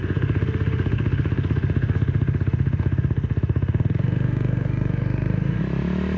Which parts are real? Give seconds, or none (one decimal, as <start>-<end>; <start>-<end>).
5.6-6.2